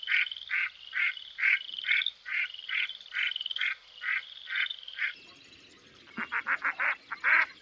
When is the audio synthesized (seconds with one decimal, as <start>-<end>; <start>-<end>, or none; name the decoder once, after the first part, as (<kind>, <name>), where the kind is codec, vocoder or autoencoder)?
none

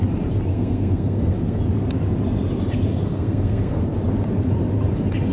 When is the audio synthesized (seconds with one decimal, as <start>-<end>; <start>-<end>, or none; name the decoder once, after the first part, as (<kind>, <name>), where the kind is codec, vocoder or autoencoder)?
0.5-1.6 (codec, SNAC); 2.9-3.8

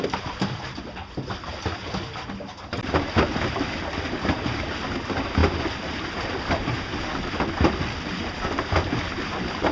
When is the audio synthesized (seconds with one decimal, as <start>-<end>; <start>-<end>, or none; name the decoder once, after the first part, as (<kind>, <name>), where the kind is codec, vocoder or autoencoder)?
none